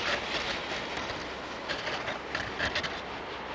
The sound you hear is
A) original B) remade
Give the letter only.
A